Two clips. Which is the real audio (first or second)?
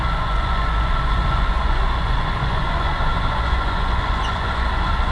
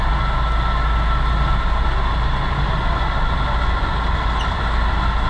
second